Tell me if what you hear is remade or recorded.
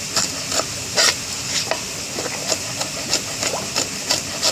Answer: recorded